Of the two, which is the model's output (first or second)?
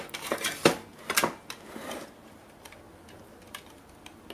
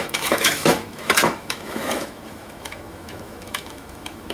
second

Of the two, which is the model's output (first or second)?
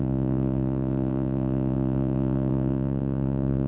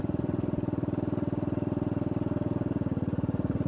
first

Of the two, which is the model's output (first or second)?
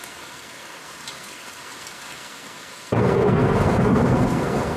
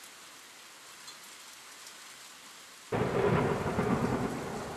first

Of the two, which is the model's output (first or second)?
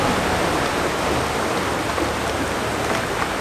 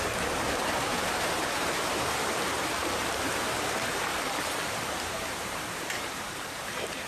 second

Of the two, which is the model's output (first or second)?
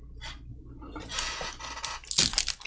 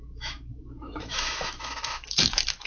second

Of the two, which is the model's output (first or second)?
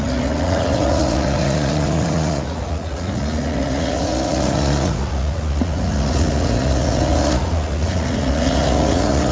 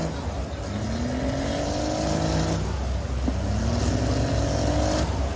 first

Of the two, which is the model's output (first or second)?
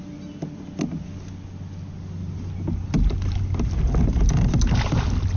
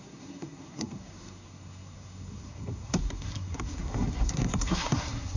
second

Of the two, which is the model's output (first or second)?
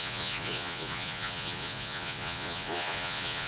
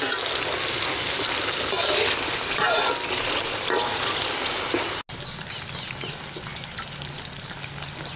first